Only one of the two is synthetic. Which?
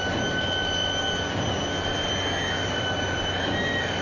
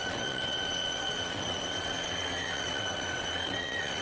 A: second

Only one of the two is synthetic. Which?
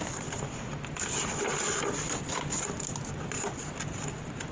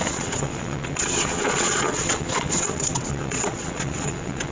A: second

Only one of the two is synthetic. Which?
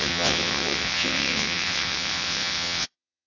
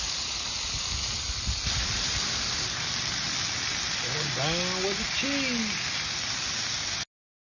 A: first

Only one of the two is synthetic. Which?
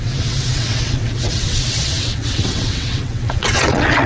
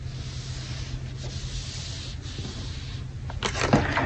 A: first